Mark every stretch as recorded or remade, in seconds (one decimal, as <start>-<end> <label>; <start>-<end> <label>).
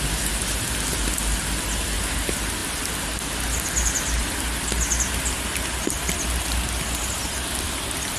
0.0-8.2 recorded